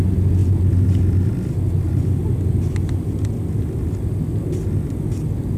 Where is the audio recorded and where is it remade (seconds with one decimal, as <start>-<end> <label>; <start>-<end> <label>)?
0.0-5.6 recorded